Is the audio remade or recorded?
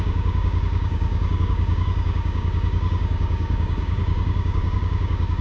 remade